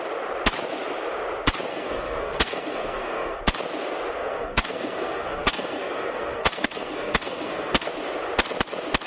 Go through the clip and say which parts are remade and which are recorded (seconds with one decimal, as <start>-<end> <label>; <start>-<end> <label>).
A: 0.0-1.7 recorded; 1.7-3.4 remade; 3.4-4.2 recorded; 4.2-7.9 remade; 7.9-9.1 recorded